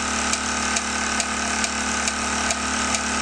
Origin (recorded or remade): recorded